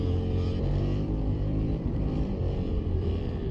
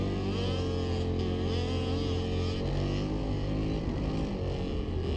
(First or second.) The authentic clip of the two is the second